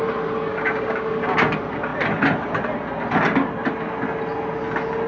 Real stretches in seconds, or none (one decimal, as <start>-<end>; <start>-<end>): 0.0-0.5; 1.5-5.1

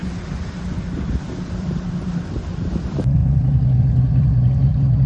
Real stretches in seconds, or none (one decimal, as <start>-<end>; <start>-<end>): 3.2-3.8

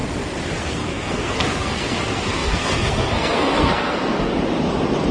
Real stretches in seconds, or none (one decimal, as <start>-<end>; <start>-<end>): 0.0-0.6; 4.3-5.1

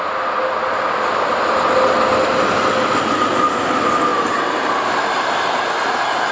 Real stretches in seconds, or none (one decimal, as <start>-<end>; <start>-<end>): 0.0-6.3

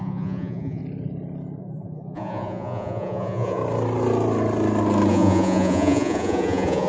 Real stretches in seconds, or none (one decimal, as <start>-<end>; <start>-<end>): 0.8-1.6; 3.6-5.1

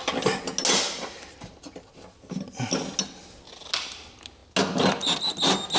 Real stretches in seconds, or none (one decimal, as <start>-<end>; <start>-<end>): 0.0-5.8

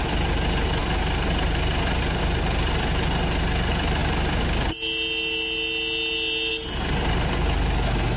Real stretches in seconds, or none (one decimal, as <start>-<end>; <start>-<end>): 0.0-8.2

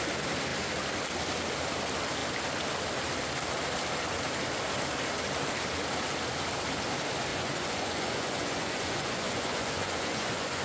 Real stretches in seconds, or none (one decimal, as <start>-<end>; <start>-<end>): 0.0-7.3